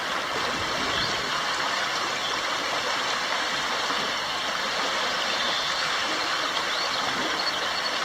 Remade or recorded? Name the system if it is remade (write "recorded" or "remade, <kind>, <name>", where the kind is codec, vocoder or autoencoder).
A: recorded